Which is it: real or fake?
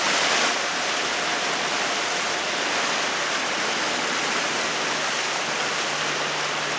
real